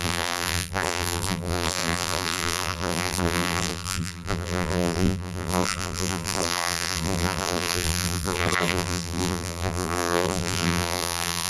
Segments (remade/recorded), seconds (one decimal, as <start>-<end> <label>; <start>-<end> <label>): 0.0-11.5 remade